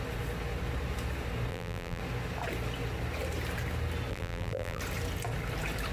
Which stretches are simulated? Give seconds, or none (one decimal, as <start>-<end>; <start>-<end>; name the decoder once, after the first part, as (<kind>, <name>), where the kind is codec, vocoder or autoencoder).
1.5-2.0 (vocoder, BigVGAN v2); 4.1-4.8